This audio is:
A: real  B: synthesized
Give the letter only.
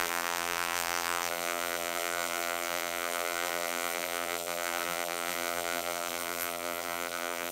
B